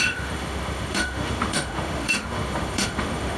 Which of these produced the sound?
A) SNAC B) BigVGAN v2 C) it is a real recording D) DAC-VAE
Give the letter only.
D